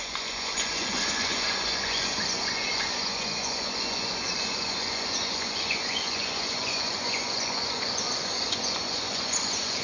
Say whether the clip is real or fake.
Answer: fake